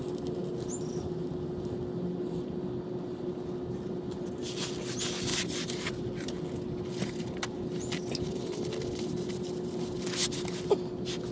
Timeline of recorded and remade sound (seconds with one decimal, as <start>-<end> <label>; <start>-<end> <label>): 0.0-11.3 recorded

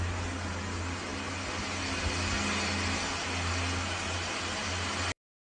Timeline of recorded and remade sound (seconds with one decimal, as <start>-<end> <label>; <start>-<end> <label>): 0.0-5.4 recorded